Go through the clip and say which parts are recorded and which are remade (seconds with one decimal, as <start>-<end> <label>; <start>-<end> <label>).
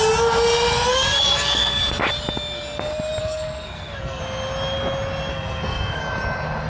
0.0-0.9 recorded; 0.9-1.8 remade; 1.8-3.2 recorded; 3.2-4.2 remade; 4.2-5.3 recorded; 5.3-6.0 remade; 6.0-6.7 recorded